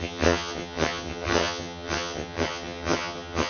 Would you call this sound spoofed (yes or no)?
yes